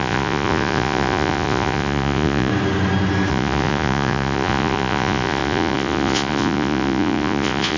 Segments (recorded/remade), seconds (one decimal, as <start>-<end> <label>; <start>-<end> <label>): 0.0-2.5 remade; 2.5-3.3 recorded; 3.3-7.8 remade